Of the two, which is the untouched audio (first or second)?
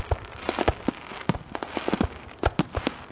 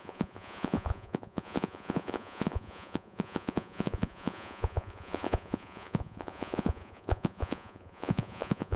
first